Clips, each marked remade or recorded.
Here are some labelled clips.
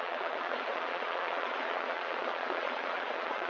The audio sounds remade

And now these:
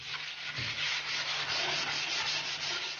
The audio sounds recorded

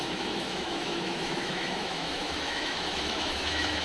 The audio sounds remade